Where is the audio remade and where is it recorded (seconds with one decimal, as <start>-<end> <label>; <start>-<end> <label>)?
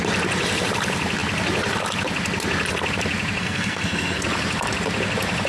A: 0.0-3.4 recorded; 3.4-4.2 remade; 4.2-5.5 recorded